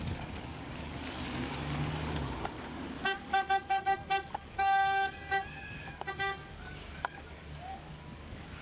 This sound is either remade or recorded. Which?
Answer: remade